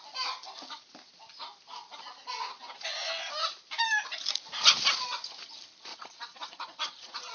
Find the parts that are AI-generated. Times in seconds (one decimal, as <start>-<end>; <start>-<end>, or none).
5.9-7.3